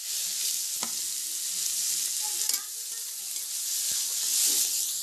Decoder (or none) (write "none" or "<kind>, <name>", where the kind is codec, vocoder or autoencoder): none